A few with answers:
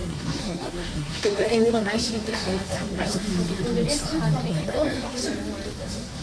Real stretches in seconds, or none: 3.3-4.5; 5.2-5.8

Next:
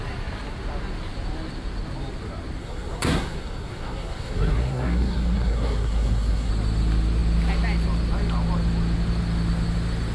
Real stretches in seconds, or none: 0.0-2.6; 6.5-10.1

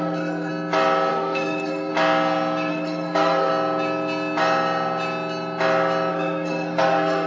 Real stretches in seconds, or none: 0.5-1.1; 1.9-2.7; 3.5-6.1

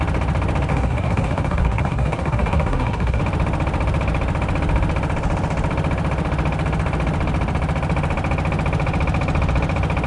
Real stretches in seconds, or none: 0.0-0.7; 3.2-10.1

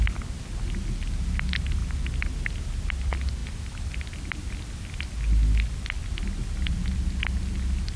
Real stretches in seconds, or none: 0.0-8.0